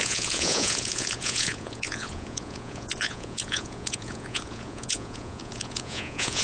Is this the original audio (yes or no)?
no